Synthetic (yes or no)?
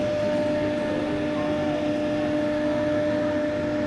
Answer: no